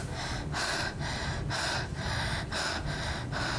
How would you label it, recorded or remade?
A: recorded